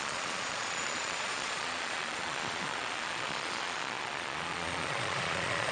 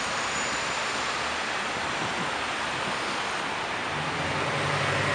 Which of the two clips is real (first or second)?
second